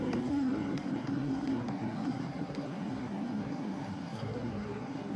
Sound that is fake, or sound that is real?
fake